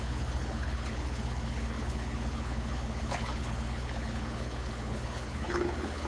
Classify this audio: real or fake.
fake